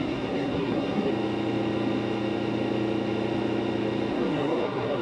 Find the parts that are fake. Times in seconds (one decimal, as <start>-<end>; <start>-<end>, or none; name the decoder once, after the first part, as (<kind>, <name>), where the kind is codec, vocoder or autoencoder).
0.0-1.1 (codec, SNAC); 4.1-5.0